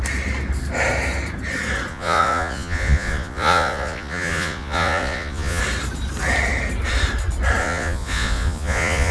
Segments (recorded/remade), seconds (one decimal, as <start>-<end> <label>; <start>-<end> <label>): 0.0-1.9 recorded; 1.9-5.6 remade; 5.6-7.6 recorded; 7.6-9.1 remade